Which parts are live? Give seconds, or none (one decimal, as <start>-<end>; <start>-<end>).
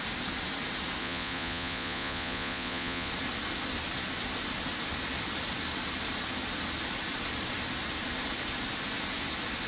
0.0-1.0; 3.1-9.7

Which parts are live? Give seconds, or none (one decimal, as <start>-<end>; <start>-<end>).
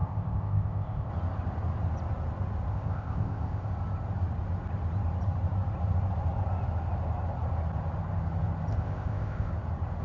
1.1-2.7; 3.7-8.7; 9.5-10.0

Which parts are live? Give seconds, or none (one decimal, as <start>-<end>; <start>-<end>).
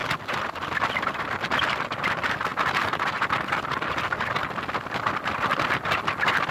0.0-6.5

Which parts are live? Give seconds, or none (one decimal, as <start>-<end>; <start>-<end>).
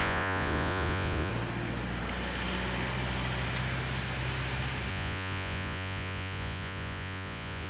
1.3-4.9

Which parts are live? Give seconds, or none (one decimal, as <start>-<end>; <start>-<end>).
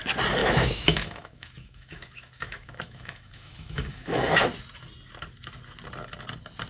0.0-0.4; 4.4-6.7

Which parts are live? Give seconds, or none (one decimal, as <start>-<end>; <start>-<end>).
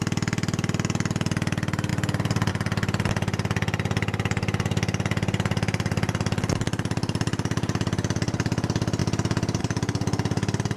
0.0-1.9; 2.5-9.0; 9.6-10.8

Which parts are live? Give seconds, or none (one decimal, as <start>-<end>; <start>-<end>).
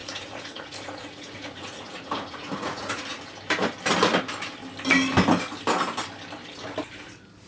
3.0-7.5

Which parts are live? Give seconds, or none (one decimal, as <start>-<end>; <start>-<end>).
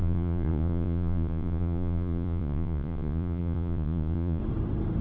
4.4-5.0